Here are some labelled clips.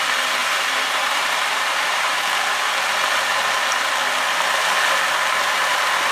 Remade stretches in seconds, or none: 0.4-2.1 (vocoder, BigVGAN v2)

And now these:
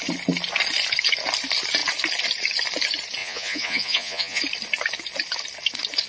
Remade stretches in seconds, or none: 3.2-4.4 (vocoder, Vocos)

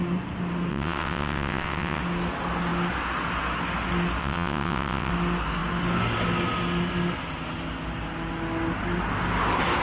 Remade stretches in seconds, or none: 0.7-2.0 (vocoder, WaveNeXt); 4.2-5.1

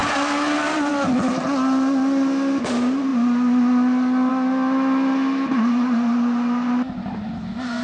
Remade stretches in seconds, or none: none

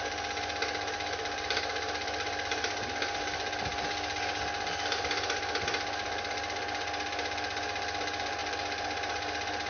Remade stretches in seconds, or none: none

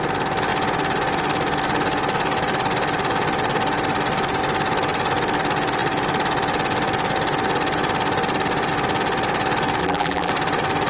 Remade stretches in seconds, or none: 9.8-10.3 (vocoder, BigVGAN v2)

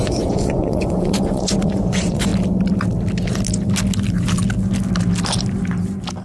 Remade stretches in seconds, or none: 0.0-2.3 (vocoder, Vocos)

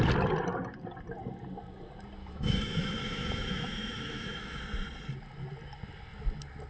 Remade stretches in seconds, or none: 2.2-4.6 (autoencoder, DAC-VAE)